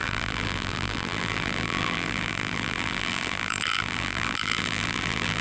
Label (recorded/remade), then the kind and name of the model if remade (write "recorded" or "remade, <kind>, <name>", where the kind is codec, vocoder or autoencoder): remade, vocoder, BigVGAN v2